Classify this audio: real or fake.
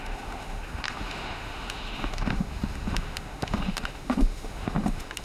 fake